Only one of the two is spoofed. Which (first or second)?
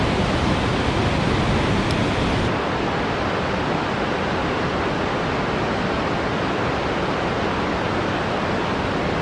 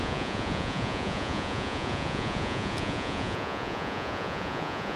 second